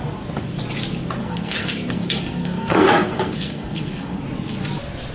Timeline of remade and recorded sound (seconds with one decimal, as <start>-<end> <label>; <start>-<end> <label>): 0.0-1.2 recorded; 1.2-4.2 remade; 4.2-5.1 recorded